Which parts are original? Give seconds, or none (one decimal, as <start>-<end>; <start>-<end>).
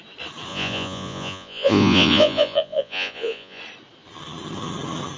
0.0-0.5; 3.6-5.2